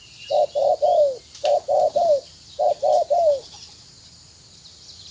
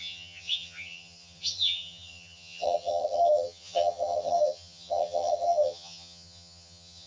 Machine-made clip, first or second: second